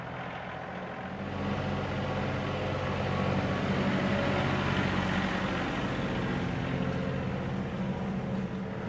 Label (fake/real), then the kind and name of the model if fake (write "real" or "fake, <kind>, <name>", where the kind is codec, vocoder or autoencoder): real